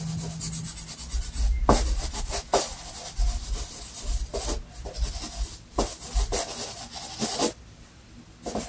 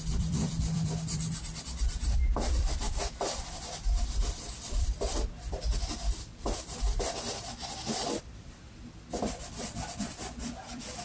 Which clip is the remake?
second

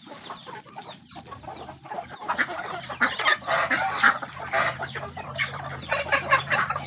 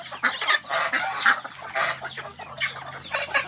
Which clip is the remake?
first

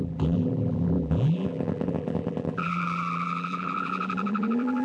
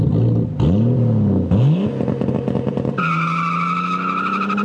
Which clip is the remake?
first